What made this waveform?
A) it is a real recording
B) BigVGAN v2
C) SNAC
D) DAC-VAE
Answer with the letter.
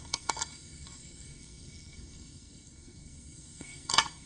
C